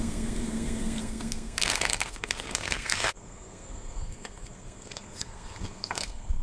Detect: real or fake fake